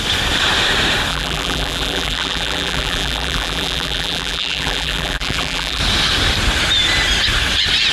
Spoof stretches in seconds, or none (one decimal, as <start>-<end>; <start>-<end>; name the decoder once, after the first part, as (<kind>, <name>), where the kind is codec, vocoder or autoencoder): 1.1-5.8 (vocoder, BigVGAN v2)